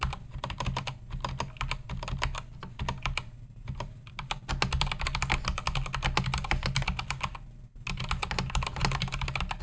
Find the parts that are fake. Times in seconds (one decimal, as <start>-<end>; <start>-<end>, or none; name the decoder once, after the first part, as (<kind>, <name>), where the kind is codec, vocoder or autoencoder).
none